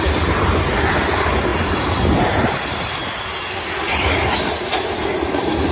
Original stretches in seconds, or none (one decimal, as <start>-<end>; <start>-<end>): 1.5-2.2; 3.0-5.1